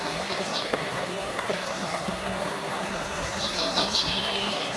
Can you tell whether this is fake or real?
fake